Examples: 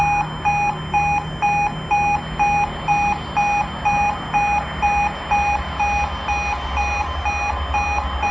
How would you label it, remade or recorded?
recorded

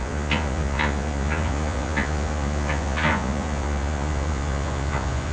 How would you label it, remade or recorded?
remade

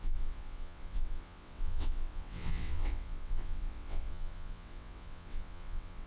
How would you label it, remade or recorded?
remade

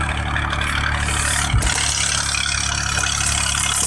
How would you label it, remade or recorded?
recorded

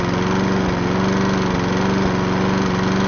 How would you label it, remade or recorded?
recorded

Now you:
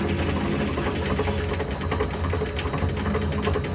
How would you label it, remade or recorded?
recorded